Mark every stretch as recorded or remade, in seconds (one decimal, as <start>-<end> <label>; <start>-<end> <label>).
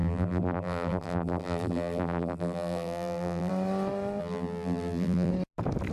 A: 0.0-3.5 remade; 3.5-4.2 recorded; 4.2-5.3 remade; 5.3-5.9 recorded